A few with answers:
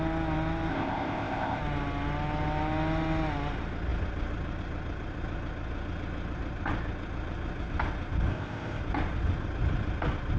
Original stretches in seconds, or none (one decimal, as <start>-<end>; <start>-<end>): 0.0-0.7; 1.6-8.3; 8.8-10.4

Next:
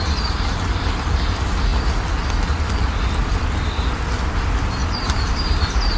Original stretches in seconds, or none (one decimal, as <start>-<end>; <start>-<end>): 0.0-4.8; 5.3-6.0

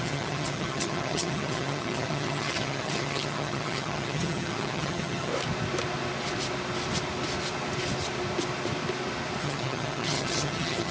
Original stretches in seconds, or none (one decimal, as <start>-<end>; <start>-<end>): 5.3-9.4

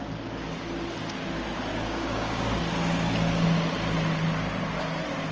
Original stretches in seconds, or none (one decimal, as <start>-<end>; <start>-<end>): 0.0-1.7; 2.6-5.3

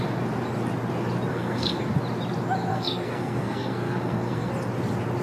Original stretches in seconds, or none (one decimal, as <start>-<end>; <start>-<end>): 0.0-1.3; 1.8-2.7; 4.5-5.2